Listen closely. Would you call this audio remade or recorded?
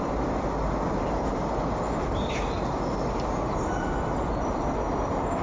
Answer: recorded